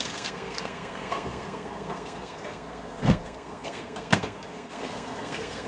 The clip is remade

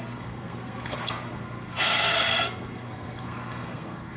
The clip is remade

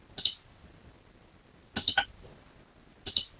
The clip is recorded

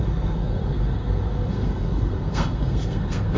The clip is remade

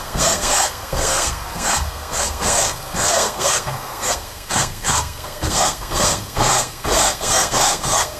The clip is remade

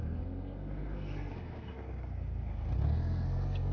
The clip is remade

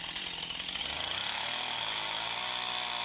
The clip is recorded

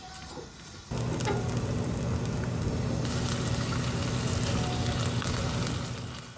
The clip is recorded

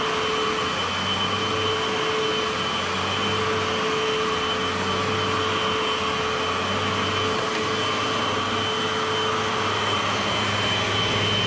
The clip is recorded